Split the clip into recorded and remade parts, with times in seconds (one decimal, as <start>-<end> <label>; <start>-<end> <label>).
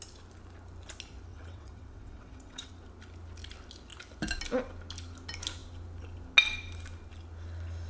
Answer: 0.0-1.3 recorded; 1.3-2.7 remade; 2.7-7.9 recorded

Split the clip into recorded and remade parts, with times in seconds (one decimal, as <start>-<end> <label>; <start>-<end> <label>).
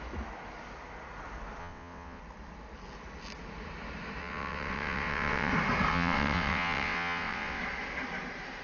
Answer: 0.0-1.6 recorded; 1.6-2.2 remade; 2.2-4.2 recorded; 4.2-5.5 remade; 5.5-5.9 recorded; 5.9-7.6 remade; 7.6-8.6 recorded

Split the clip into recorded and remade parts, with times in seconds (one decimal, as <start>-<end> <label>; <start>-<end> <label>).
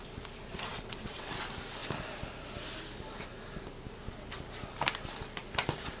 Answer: 0.0-0.7 recorded; 0.7-1.4 remade; 1.4-6.0 recorded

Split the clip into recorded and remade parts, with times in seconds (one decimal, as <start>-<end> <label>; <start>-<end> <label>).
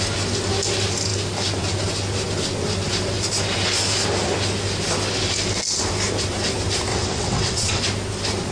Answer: 0.0-6.9 recorded; 6.9-7.8 remade; 7.8-8.5 recorded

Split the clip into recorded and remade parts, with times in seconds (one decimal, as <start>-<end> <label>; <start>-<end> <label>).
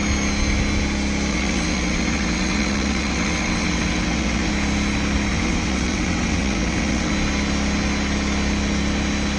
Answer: 0.0-1.3 recorded; 1.3-4.5 remade; 4.5-5.3 recorded; 5.3-7.1 remade; 7.1-9.4 recorded